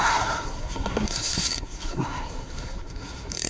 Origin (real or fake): fake